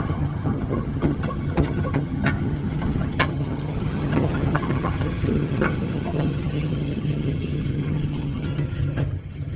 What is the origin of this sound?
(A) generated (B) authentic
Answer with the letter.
A